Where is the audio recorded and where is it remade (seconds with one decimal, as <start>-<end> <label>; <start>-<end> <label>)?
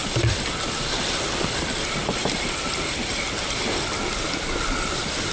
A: 0.0-5.3 recorded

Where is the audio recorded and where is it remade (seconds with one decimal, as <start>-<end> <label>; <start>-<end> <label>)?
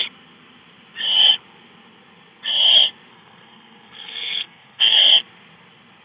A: 0.0-3.1 recorded; 3.1-5.1 remade; 5.1-6.0 recorded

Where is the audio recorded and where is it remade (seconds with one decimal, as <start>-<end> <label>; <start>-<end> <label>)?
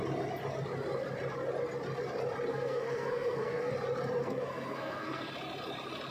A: 0.0-2.5 recorded; 2.5-3.7 remade; 3.7-4.2 recorded; 4.2-5.3 remade; 5.3-6.1 recorded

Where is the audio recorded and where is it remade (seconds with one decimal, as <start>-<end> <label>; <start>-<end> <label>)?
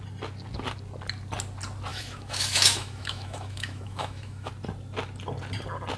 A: 0.0-1.9 recorded; 1.9-4.5 remade; 4.5-6.0 recorded